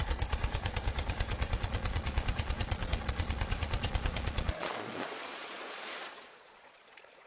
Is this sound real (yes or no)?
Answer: no